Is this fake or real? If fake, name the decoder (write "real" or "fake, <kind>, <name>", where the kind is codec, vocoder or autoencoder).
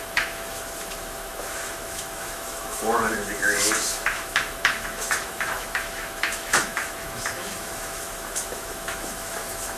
fake, autoencoder, DAC-VAE